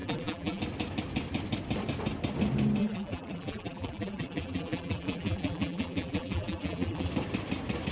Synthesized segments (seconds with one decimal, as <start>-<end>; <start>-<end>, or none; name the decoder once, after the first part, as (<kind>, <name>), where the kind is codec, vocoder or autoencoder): 0.0-0.6 (vocoder, BigVGAN v2); 2.8-7.1